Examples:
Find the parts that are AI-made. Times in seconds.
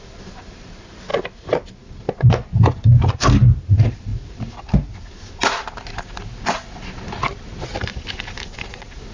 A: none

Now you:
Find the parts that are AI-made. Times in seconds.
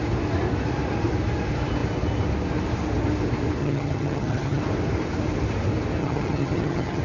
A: 3.6-4.6 (vocoder, HiFi-GAN); 6.0-7.0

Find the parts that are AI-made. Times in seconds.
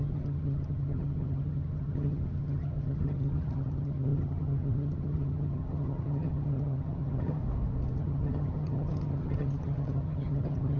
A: 0.0-7.4 (vocoder, HiFi-GAN); 8.0-10.8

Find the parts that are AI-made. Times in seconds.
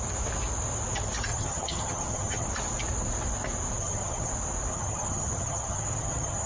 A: 1.3-2.5 (vocoder, HiFi-GAN); 3.8-4.3; 4.7-6.5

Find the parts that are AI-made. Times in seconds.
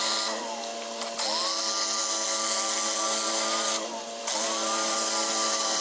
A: none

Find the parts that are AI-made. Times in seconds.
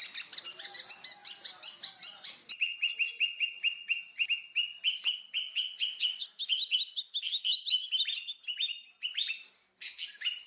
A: none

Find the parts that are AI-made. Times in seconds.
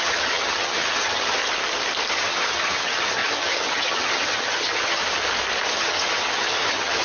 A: 0.0-1.4 (vocoder, HiFi-GAN); 2.1-5.0; 5.7-7.0